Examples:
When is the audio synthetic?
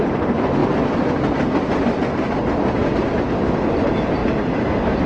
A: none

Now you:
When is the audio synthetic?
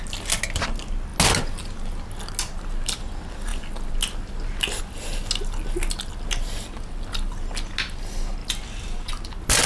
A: 8.4-9.1 (vocoder, BigVGAN v2)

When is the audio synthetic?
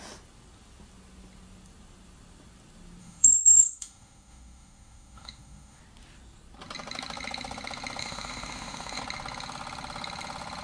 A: 3.0-5.8 (autoencoder, DAC-VAE); 8.0-9.0